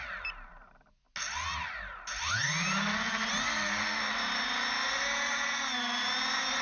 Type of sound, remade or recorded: recorded